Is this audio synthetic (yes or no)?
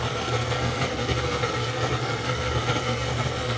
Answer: yes